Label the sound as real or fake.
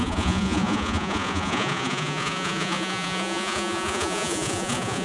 fake